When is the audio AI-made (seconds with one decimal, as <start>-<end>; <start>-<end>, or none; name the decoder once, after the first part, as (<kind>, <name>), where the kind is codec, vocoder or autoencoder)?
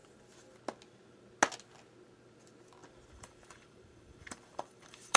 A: 3.1-5.2 (vocoder, BigVGAN v2)